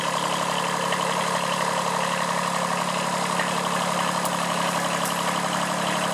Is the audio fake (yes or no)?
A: no